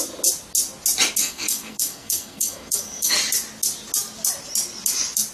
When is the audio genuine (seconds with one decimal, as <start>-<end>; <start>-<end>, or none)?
0.0-1.2; 3.1-5.3